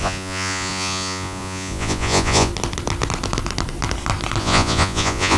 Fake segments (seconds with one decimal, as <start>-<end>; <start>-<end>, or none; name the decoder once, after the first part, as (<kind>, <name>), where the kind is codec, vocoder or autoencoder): 0.0-2.5 (vocoder, Vocos); 4.4-5.4